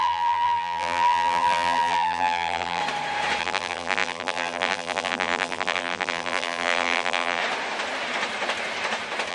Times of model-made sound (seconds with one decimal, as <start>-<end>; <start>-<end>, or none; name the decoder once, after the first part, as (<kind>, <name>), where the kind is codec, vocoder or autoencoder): 0.0-2.8 (vocoder, BigVGAN v2); 3.4-7.4